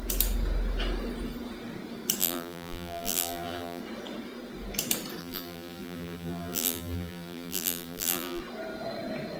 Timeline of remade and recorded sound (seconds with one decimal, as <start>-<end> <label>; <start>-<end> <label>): 0.0-2.2 recorded; 2.2-3.8 remade; 3.8-5.2 recorded; 5.2-8.4 remade; 8.4-9.4 recorded